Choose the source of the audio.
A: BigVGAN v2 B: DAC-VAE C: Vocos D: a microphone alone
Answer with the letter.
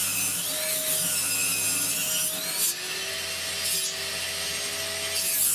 D